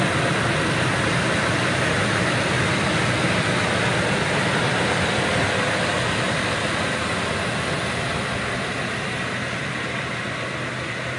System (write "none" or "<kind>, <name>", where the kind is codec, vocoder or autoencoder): none